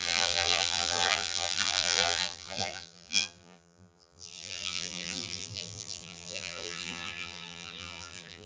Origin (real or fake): fake